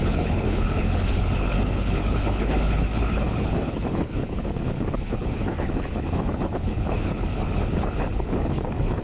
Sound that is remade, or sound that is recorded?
remade